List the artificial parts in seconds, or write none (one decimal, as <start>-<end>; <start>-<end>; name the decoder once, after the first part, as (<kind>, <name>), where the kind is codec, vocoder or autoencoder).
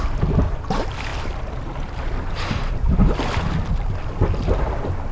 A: 1.1-4.2 (vocoder, BigVGAN v2)